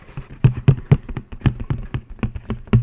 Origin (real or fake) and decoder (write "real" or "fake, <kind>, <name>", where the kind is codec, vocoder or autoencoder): real